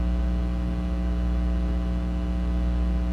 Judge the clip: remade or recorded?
recorded